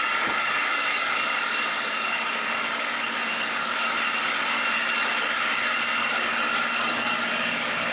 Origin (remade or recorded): remade